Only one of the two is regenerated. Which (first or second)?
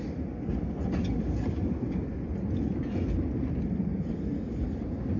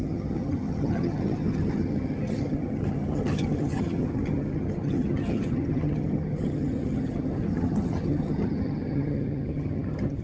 second